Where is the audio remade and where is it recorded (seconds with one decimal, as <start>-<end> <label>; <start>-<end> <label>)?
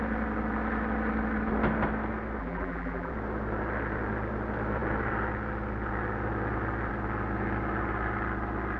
0.0-2.4 recorded; 2.4-3.1 remade; 3.1-8.8 recorded